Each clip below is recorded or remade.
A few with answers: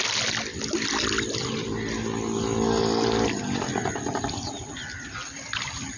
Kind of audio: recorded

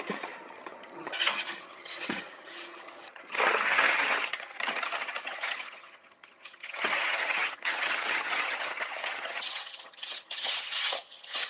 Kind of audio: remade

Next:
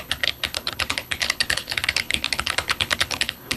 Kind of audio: remade